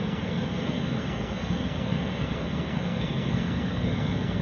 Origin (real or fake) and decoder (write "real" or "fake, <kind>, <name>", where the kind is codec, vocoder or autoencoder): fake, codec, SNAC